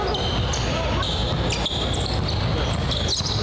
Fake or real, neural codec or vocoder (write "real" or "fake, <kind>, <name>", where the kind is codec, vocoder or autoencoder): real